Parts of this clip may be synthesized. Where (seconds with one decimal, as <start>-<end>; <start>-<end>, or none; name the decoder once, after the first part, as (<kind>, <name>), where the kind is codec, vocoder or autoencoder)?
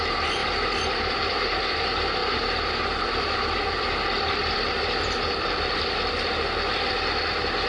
0.4-1.6 (vocoder, BigVGAN v2); 2.2-5.8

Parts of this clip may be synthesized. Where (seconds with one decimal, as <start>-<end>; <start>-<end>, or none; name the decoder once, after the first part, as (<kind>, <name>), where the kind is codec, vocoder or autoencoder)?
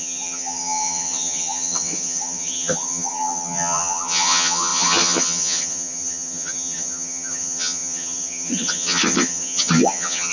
0.0-10.3 (vocoder, HiFi-GAN)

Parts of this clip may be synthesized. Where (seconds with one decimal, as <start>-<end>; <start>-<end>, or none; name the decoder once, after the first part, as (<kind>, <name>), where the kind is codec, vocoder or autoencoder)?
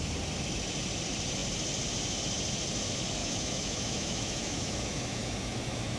3.2-6.0 (autoencoder, DAC-VAE)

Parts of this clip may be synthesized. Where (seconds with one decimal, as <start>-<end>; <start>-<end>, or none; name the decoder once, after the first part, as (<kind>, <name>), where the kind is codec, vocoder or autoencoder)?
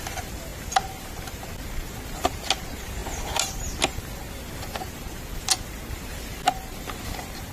none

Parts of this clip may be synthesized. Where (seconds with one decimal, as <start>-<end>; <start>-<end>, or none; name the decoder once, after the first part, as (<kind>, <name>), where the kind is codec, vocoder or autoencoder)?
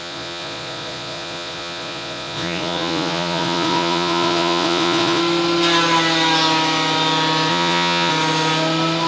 0.0-5.2 (vocoder, Vocos); 7.5-8.1